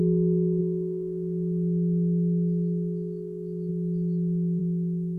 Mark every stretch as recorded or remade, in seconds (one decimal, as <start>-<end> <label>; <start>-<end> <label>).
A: 0.0-0.6 recorded; 0.6-3.7 remade; 3.7-5.2 recorded

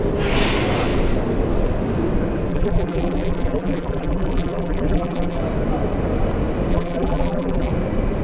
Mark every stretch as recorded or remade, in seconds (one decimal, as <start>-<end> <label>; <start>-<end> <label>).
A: 0.0-2.5 recorded; 2.5-5.4 remade; 5.4-6.7 recorded; 6.7-7.7 remade; 7.7-8.2 recorded

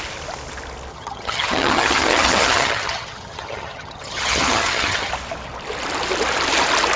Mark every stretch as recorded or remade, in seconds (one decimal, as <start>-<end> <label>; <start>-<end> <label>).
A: 0.0-0.9 recorded; 0.9-5.1 remade; 5.1-7.0 recorded

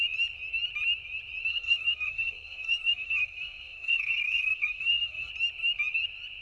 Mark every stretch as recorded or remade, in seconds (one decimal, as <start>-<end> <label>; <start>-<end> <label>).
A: 0.0-1.5 recorded; 1.5-5.3 remade; 5.3-6.4 recorded

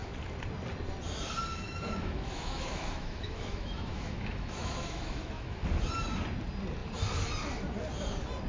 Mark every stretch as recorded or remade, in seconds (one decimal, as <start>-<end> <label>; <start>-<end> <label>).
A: 0.0-1.5 recorded; 1.5-5.6 remade; 5.6-8.5 recorded